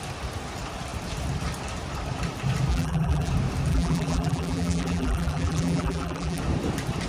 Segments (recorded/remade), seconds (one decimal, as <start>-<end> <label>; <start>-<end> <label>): 0.0-2.7 recorded; 2.7-3.3 remade; 3.3-3.7 recorded; 3.7-6.4 remade; 6.4-7.1 recorded